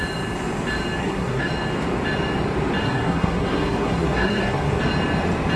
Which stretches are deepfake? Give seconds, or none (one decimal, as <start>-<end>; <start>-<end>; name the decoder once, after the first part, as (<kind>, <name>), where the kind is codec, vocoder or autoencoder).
1.0-1.5 (codec, SNAC); 2.8-4.8